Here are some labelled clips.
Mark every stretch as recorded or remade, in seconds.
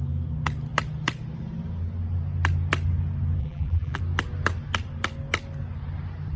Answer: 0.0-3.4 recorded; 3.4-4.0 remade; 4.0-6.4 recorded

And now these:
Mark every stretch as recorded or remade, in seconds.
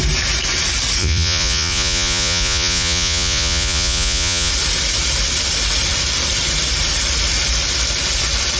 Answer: 0.0-1.0 recorded; 1.0-4.5 remade; 4.5-8.6 recorded